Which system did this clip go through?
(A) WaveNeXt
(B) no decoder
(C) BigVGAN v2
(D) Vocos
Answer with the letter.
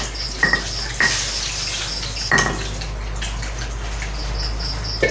B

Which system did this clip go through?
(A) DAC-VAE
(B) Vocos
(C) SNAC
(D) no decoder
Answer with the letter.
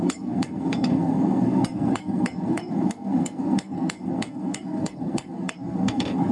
C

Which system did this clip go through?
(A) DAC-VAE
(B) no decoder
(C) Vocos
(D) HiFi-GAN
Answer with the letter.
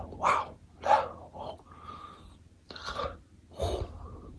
B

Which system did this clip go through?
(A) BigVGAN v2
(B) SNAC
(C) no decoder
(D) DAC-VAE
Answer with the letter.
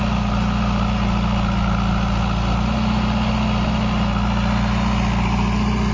C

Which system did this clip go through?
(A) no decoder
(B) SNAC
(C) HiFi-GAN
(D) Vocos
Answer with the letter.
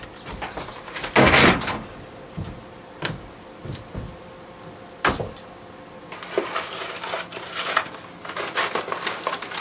A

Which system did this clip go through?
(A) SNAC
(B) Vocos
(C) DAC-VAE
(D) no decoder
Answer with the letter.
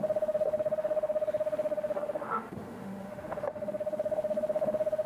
C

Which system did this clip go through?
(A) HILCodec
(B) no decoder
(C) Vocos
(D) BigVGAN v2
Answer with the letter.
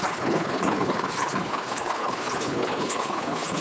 A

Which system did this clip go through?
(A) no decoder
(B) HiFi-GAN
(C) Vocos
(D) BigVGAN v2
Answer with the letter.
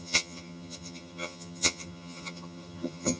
B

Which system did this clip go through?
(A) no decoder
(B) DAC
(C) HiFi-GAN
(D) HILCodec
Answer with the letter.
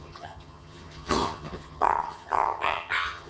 C